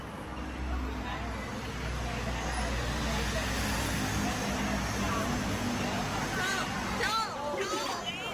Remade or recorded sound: recorded